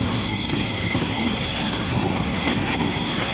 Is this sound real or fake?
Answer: fake